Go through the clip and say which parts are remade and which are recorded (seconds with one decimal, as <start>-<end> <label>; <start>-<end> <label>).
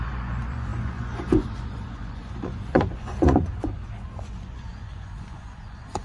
0.0-6.0 remade